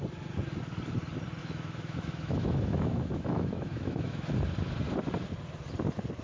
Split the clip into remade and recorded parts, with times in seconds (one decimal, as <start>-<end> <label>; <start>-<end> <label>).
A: 0.0-1.4 recorded; 1.4-4.3 remade; 4.3-6.2 recorded